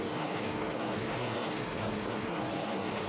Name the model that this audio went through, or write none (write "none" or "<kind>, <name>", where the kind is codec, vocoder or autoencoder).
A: codec, SNAC